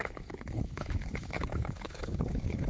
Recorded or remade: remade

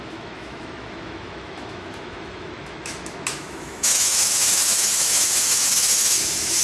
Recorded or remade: remade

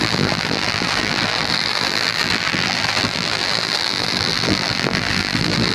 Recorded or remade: remade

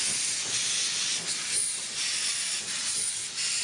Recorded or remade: recorded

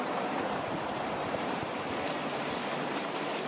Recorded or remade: remade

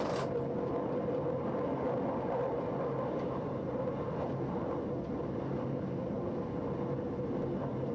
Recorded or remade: recorded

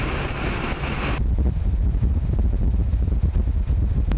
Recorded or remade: recorded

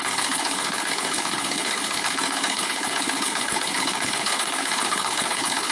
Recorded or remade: remade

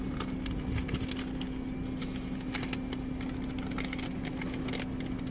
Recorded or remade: recorded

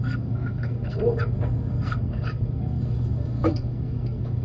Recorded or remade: remade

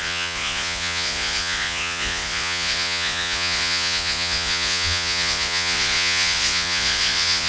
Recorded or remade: remade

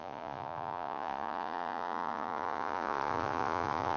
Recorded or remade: remade